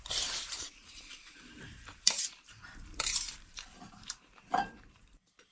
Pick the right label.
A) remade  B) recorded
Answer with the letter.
A